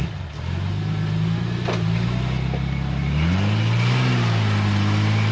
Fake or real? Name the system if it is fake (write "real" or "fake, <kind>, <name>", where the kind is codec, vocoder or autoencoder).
real